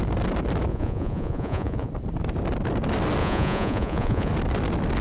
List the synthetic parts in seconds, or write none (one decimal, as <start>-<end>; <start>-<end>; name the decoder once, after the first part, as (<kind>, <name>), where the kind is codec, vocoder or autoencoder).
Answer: 0.7-1.9 (vocoder, Vocos); 3.2-4.3